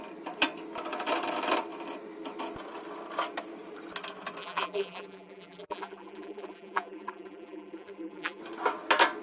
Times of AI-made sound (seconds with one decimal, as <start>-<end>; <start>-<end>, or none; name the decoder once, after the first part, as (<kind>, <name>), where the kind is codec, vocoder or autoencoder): 4.4-8.4 (vocoder, BigVGAN v2)

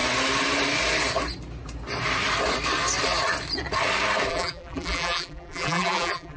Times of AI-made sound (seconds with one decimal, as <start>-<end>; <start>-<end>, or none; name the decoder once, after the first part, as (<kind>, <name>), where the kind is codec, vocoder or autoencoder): 4.3-6.4 (vocoder, BigVGAN v2)

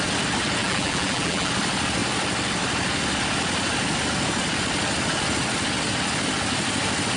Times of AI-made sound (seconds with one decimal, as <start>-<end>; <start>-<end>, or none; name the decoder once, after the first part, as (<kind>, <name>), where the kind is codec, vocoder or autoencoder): 0.6-1.5 (vocoder, BigVGAN v2)

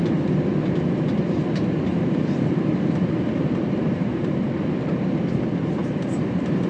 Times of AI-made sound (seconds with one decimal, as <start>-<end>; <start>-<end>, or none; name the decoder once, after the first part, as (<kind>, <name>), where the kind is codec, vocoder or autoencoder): 1.9-4.5 (vocoder, BigVGAN v2); 5.8-6.7

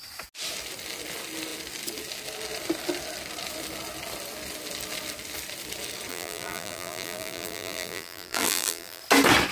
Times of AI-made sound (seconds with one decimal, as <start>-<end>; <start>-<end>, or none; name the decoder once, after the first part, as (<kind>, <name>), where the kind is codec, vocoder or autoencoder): 6.1-9.0 (vocoder, BigVGAN v2)

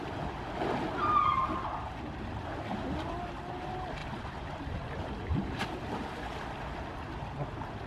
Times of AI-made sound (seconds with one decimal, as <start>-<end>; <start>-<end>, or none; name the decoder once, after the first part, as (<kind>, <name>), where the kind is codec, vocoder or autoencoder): 4.0-5.6 (vocoder, BigVGAN v2)